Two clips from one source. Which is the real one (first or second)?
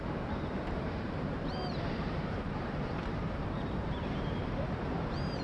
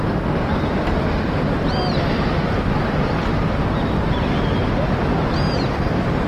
second